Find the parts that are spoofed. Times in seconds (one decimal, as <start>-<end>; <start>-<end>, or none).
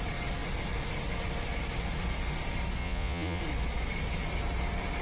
2.8-3.4